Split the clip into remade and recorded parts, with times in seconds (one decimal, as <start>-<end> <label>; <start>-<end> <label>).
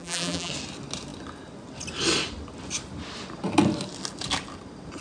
0.0-0.5 remade; 0.5-5.0 recorded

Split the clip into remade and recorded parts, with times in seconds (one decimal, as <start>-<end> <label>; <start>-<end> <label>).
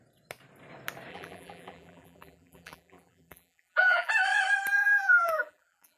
0.0-1.1 recorded; 1.1-4.1 remade; 4.1-4.8 recorded; 4.8-6.0 remade